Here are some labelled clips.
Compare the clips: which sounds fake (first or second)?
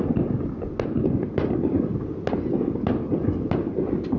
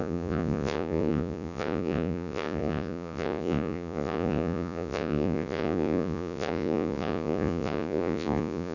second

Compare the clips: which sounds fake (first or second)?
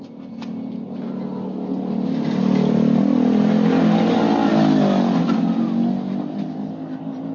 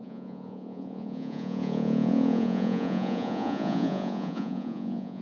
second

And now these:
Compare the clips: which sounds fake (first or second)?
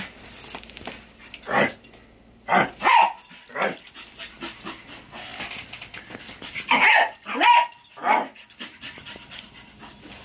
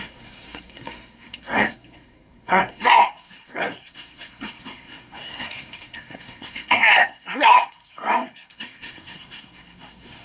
second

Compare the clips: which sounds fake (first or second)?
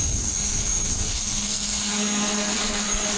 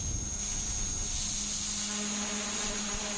first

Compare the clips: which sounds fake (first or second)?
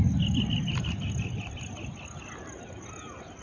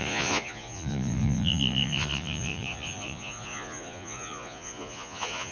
second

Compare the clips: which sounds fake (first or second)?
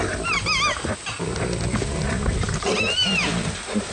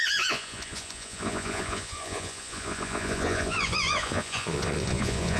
second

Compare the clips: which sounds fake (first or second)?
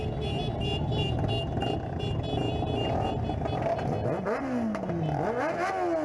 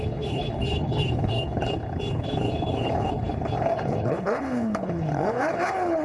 second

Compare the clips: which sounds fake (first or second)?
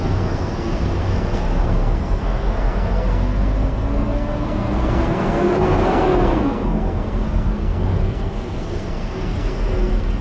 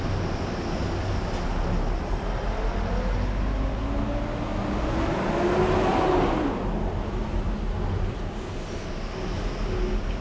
first